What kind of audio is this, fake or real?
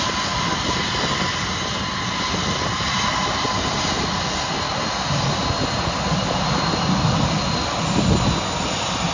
real